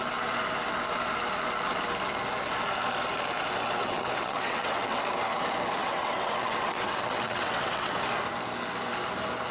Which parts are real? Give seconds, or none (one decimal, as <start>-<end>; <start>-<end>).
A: 0.0-3.8; 5.0-5.8; 7.9-9.5